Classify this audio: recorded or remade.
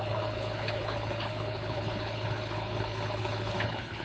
remade